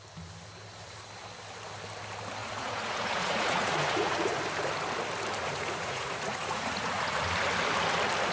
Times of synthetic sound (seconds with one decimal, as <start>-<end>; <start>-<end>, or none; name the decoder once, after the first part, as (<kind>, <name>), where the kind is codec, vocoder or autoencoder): 2.4-4.4 (vocoder, Vocos); 5.4-7.2